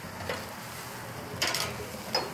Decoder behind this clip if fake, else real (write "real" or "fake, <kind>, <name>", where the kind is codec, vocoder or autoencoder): real